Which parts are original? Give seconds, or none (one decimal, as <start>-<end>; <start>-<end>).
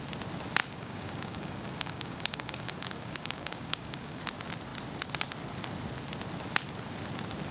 0.0-0.6; 4.2-7.5